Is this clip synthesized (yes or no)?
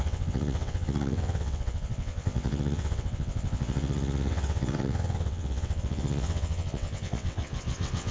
yes